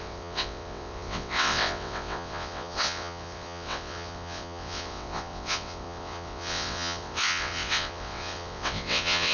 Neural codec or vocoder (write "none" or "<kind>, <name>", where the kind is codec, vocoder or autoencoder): vocoder, WaveNeXt